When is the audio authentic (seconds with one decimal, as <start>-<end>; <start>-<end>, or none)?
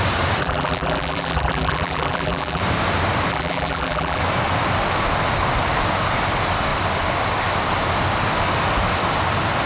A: 0.0-0.4; 2.6-3.3; 4.2-9.7